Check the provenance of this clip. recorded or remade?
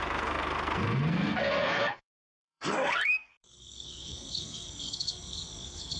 remade